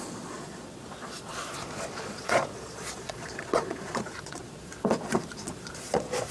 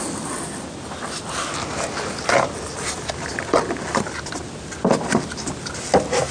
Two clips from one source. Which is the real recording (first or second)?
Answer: second